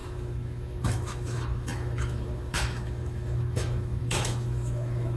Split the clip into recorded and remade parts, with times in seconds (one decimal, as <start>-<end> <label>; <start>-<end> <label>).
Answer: 0.0-5.2 remade